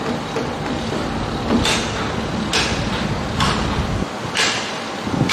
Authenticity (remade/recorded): recorded